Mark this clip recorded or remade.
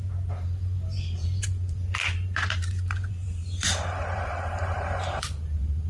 remade